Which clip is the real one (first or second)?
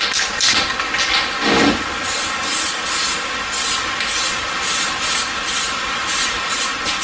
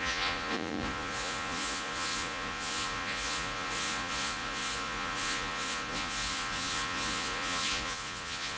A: first